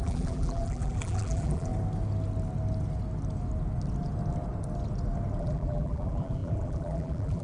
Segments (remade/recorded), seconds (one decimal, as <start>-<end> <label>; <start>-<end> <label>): 0.0-1.7 remade; 1.7-5.4 recorded; 5.4-7.4 remade